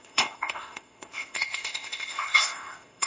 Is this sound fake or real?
fake